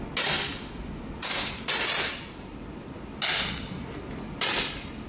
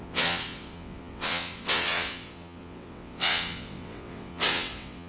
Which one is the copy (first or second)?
second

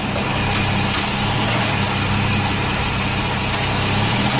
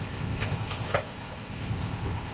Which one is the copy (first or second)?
second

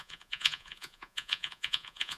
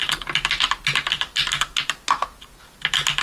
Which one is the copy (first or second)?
first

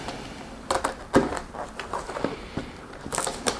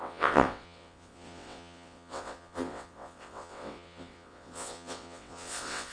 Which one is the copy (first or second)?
second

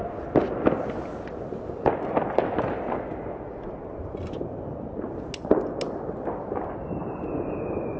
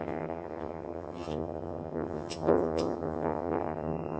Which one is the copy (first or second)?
second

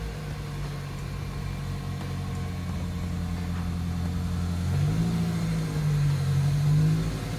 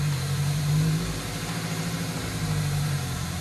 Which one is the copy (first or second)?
second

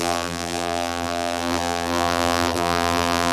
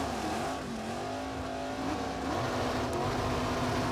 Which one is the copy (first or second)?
first